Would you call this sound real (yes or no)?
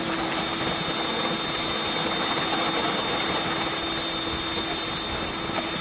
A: yes